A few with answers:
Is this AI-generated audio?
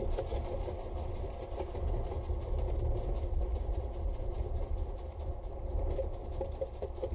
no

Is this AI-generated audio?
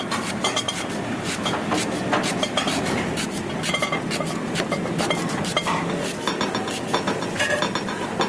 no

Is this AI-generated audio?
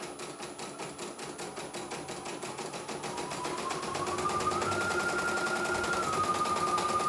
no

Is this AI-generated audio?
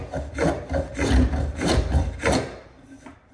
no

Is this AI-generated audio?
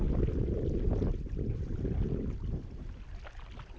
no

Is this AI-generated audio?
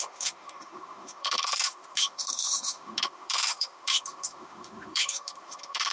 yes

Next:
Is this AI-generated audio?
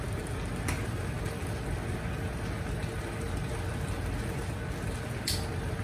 no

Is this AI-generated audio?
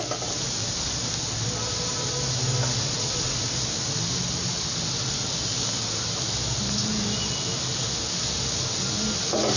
no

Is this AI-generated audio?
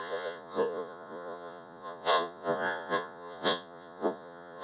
yes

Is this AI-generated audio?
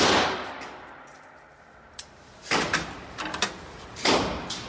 yes